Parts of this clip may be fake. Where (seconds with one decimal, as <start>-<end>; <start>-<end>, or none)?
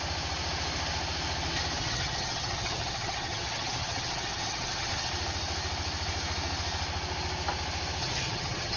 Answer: 1.8-5.1; 8.0-8.8